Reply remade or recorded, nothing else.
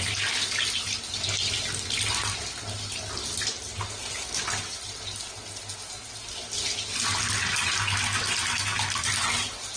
recorded